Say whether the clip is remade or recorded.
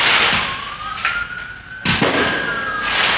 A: recorded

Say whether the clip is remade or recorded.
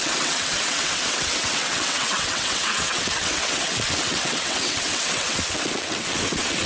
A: remade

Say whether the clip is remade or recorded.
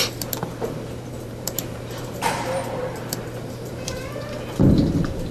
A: remade